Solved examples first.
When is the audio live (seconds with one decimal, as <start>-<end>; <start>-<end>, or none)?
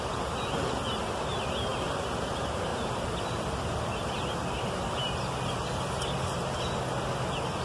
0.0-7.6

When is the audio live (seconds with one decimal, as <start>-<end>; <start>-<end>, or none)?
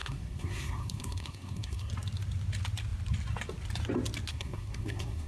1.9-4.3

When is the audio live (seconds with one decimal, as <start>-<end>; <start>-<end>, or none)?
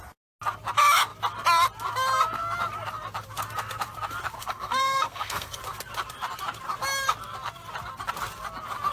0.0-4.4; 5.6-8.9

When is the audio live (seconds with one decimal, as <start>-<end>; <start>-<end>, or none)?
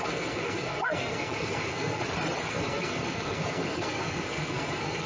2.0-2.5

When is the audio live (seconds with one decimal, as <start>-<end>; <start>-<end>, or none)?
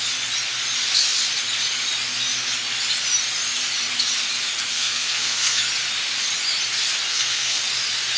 0.0-4.7; 5.6-7.1; 7.6-8.2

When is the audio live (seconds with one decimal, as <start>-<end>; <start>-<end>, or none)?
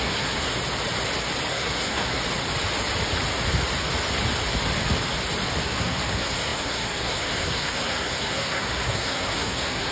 0.5-1.5; 2.2-5.6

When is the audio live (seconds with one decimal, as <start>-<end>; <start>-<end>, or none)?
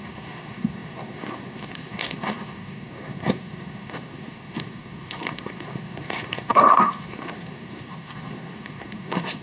none